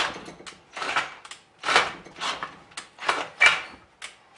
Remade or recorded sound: recorded